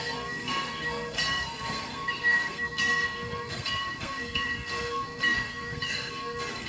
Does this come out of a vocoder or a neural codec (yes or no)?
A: yes